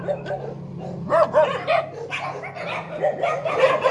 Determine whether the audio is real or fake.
real